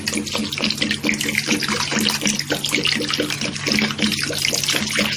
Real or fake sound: real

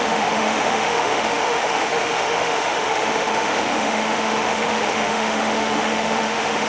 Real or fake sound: fake